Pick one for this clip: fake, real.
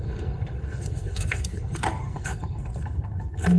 fake